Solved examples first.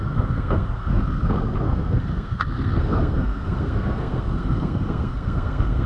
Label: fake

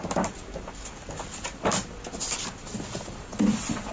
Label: real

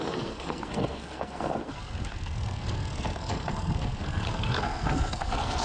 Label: fake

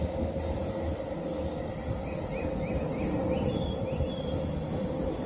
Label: real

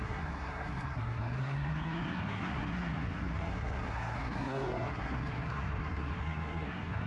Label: fake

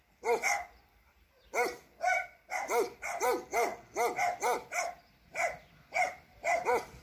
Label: real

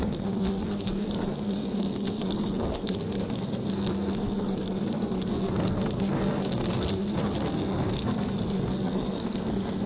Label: fake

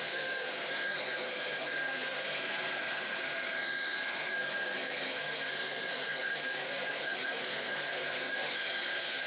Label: fake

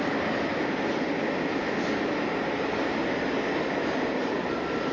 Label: real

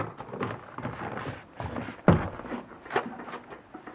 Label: real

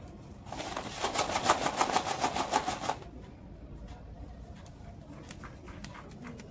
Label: real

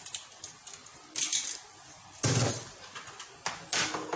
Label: real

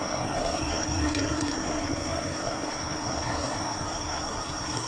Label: fake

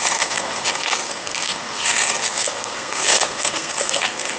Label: fake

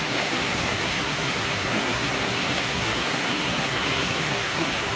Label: fake